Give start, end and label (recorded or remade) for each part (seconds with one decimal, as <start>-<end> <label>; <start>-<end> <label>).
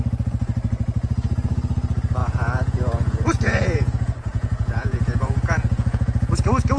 0.0-2.2 recorded; 2.2-6.3 remade; 6.3-6.8 recorded